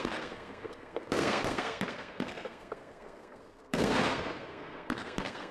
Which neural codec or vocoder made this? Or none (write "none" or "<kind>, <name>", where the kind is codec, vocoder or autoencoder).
codec, SNAC